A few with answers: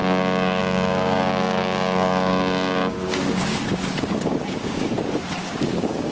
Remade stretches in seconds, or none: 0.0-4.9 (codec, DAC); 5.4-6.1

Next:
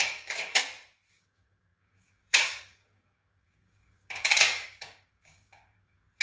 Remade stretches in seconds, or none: 0.0-0.6 (codec, DAC); 1.1-6.2